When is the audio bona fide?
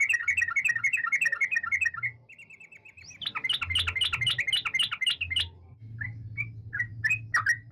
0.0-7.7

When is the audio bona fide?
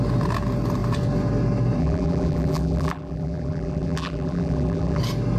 0.0-1.8; 5.0-5.4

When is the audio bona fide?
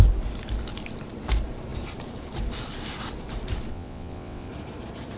0.0-3.7; 4.5-5.2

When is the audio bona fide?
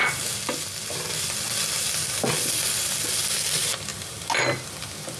0.0-5.2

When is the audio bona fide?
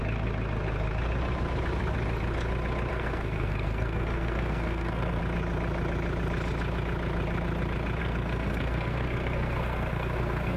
0.0-2.9; 5.2-8.0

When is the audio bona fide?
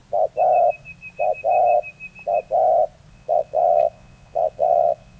0.0-3.1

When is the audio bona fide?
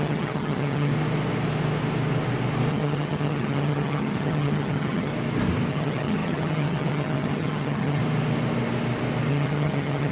0.9-2.7; 5.1-5.7; 8.0-9.3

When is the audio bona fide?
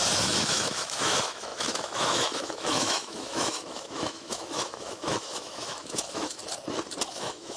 6.4-7.1